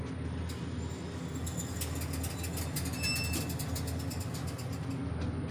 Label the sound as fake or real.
real